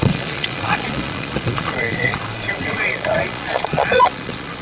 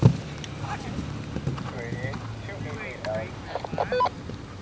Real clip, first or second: second